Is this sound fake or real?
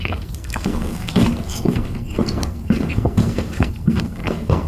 fake